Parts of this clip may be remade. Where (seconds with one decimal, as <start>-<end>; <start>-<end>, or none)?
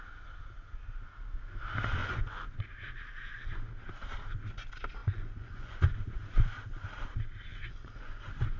2.0-2.6; 5.0-5.9; 7.5-8.6